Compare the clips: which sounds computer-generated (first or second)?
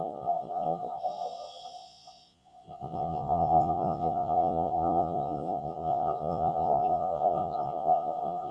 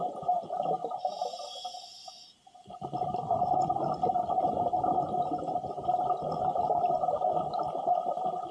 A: first